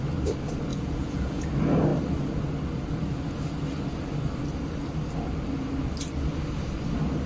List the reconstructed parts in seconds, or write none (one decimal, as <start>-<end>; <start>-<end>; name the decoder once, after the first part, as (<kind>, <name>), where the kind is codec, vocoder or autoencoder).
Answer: 0.7-1.4 (vocoder, Vocos)

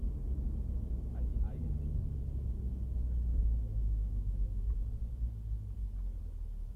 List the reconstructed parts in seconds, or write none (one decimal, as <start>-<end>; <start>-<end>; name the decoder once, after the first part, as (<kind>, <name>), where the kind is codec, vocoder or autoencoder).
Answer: 3.3-4.8 (autoencoder, DAC-VAE)

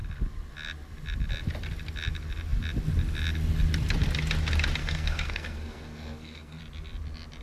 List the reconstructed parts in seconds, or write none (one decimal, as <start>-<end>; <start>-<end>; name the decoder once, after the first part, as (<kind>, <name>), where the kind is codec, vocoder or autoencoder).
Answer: 4.8-6.6 (codec, SNAC)

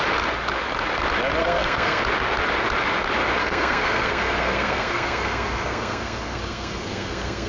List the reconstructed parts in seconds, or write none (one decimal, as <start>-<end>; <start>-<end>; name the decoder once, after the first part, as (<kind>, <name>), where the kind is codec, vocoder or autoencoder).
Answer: 1.4-2.0 (codec, SNAC); 3.4-7.5